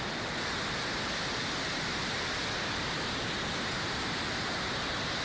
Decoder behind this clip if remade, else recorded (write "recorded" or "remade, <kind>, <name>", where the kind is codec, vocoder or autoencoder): recorded